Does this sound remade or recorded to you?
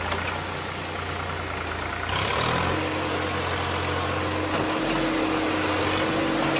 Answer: recorded